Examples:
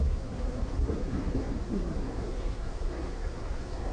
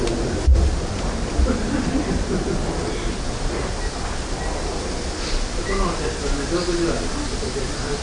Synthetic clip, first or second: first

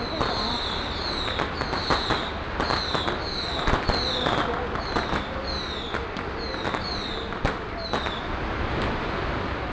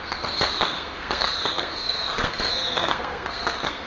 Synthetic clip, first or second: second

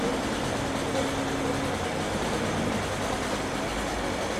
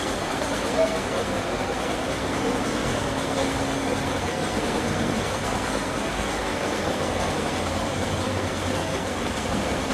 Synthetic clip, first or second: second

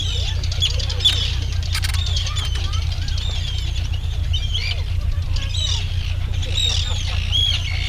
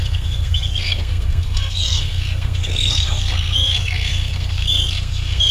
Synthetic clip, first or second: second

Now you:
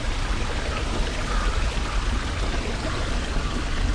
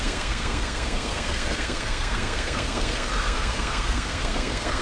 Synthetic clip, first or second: second